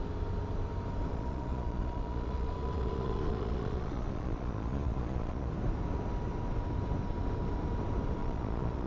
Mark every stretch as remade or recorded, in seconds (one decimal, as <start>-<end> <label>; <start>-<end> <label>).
0.0-1.1 recorded; 1.1-5.5 remade; 5.5-8.2 recorded; 8.2-8.9 remade